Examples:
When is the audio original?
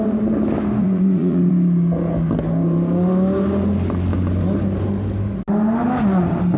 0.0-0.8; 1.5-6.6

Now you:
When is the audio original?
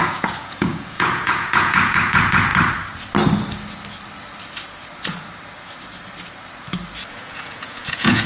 2.5-7.1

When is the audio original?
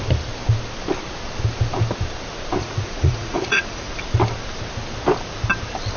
0.0-2.6; 3.9-6.0